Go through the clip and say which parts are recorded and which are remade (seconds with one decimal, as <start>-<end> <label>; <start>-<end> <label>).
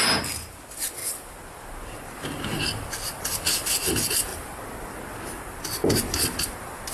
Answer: 0.0-6.9 recorded